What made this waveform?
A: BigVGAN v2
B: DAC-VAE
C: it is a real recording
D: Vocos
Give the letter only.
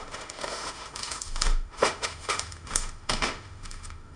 B